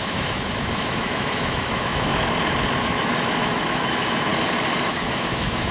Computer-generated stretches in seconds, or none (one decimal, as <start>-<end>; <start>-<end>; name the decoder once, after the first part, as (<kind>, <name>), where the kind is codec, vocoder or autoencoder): 0.0-2.1 (autoencoder, DAC-VAE); 2.8-4.3; 4.9-5.7